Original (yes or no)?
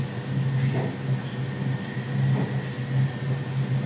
yes